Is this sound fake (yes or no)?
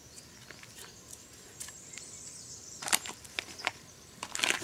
yes